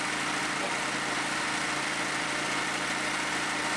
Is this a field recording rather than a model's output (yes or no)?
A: yes